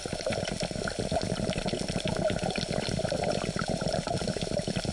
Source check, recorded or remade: recorded